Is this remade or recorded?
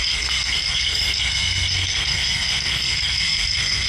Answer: remade